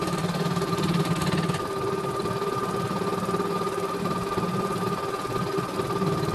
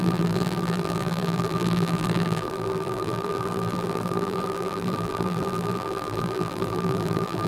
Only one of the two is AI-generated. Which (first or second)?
second